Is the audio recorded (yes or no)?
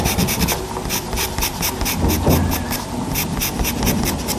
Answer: yes